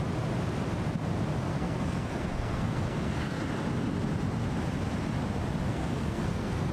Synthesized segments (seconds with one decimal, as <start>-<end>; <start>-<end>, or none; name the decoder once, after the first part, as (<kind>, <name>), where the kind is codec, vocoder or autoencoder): 1.5-3.4 (codec, SNAC); 5.7-6.7